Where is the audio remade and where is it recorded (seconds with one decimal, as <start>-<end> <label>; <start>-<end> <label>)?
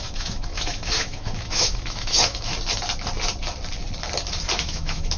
0.0-2.5 remade; 2.5-4.6 recorded; 4.6-5.2 remade